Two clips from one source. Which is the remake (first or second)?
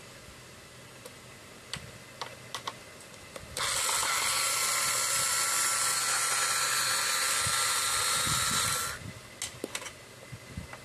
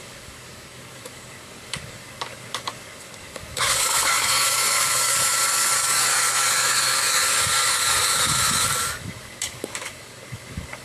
second